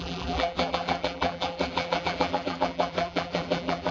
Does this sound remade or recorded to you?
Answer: remade